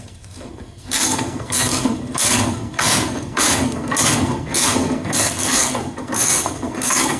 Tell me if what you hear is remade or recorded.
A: remade